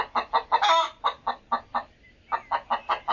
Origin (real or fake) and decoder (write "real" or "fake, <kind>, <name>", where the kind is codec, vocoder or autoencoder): real